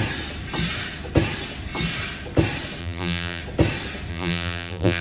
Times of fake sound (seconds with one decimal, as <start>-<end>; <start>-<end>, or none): 2.8-3.4; 4.1-5.0